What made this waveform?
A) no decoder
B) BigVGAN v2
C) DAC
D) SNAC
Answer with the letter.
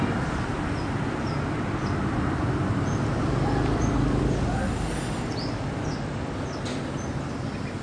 A